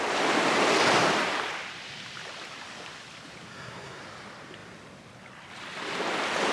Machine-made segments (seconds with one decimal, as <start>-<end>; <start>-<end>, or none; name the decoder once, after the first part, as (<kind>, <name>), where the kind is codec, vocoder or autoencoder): 3.5-4.0 (codec, SNAC)